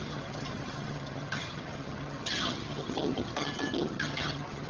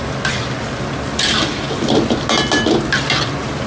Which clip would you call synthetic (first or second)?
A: first